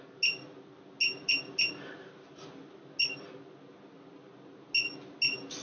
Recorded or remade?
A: recorded